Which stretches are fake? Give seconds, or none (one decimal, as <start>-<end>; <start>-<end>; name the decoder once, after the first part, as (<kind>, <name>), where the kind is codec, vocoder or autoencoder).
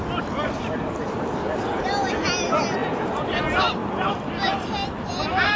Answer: none